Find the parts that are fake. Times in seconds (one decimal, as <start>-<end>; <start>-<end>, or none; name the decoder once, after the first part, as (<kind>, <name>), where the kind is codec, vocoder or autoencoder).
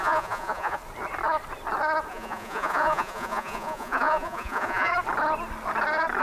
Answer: 0.0-0.8 (vocoder, Vocos); 2.1-4.9